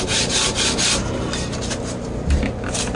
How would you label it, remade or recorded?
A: recorded